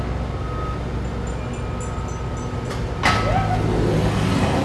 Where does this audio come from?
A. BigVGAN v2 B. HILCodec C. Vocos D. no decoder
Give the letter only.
D